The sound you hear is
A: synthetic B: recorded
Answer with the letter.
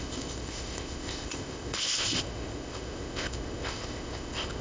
A